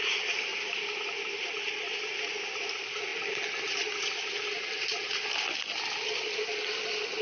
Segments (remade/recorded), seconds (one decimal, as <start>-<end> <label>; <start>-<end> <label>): 0.0-7.2 recorded